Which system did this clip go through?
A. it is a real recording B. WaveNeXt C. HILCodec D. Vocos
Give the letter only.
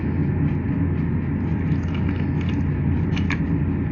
A